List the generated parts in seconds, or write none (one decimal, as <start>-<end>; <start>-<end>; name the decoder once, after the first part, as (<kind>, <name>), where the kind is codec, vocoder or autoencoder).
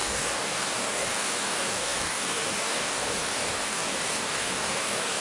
0.0-5.2 (codec, DAC)